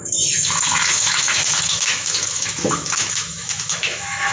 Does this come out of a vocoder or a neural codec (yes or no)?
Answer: yes